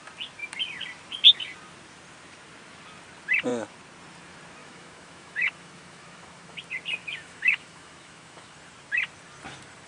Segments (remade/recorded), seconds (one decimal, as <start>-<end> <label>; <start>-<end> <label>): 0.0-4.6 recorded; 4.6-6.6 remade; 6.6-7.0 recorded; 7.0-8.5 remade; 8.5-9.9 recorded